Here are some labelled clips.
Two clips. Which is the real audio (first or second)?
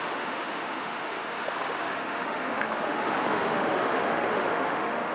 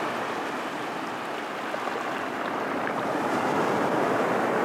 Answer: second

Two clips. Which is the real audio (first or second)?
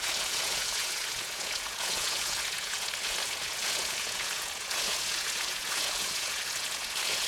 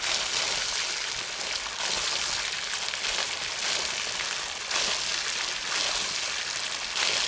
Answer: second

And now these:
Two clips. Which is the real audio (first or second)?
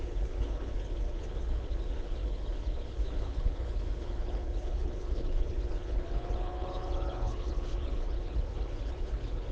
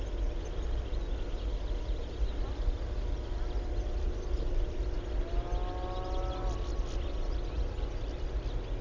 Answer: second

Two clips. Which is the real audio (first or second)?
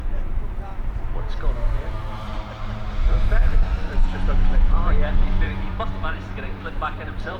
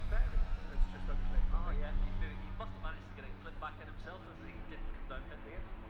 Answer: second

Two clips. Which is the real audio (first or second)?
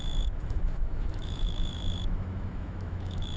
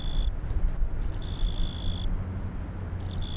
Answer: second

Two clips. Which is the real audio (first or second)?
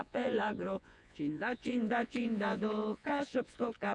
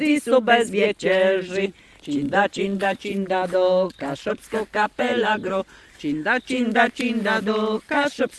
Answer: second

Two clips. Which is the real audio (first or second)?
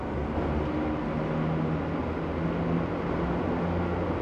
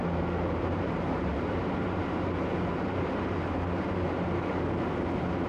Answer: first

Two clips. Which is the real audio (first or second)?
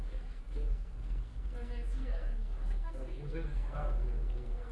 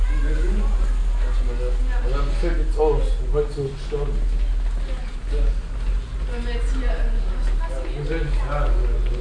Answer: second